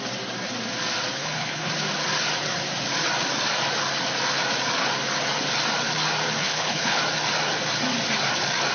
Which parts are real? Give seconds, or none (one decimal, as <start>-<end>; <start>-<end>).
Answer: 0.0-1.2; 1.7-6.4; 7.0-8.7